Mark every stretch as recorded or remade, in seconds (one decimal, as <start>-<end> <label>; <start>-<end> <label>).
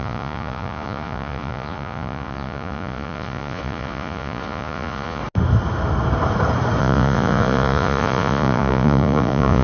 0.0-5.2 remade; 5.2-6.8 recorded; 6.8-9.6 remade